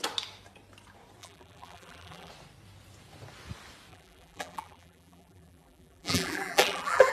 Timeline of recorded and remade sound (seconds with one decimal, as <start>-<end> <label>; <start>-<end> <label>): 0.0-1.2 recorded; 1.2-2.3 remade; 2.3-3.9 recorded; 3.9-7.1 remade